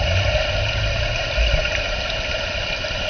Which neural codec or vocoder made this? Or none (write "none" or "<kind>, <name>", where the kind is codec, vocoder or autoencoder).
none